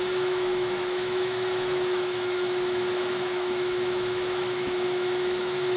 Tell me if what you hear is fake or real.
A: fake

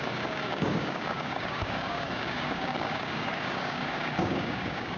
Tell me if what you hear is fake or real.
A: fake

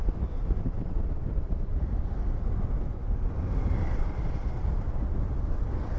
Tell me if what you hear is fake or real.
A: real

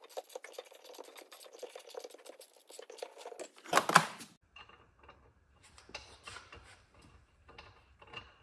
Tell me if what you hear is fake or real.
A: real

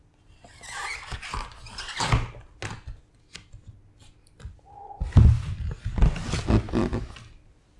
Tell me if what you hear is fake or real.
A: real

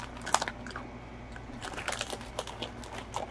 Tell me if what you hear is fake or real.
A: real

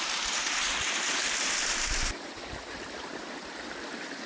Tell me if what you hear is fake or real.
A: real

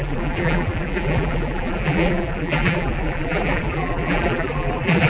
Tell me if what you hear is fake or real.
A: fake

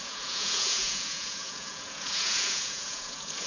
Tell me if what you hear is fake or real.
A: fake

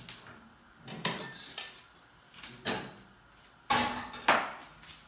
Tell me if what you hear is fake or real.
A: real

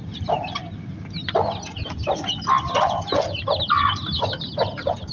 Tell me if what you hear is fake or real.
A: real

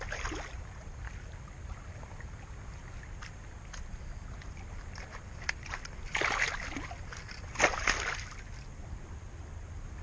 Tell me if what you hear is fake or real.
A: real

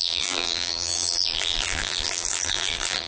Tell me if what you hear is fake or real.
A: fake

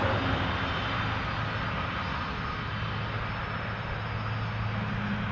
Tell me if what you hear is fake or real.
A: real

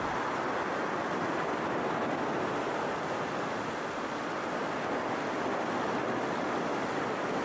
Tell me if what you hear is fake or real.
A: real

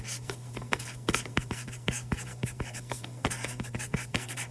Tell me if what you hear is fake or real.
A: fake